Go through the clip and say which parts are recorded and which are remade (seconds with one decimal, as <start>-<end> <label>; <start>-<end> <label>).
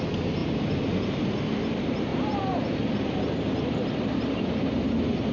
0.0-5.3 recorded